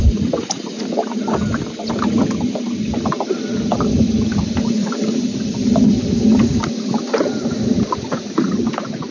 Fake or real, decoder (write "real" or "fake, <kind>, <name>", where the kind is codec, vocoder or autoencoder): real